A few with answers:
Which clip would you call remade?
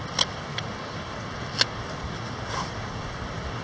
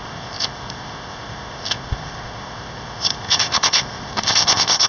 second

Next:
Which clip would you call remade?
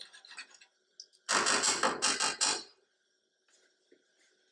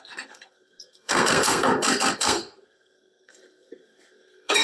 second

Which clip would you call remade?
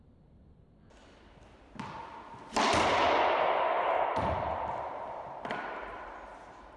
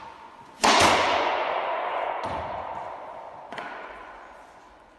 second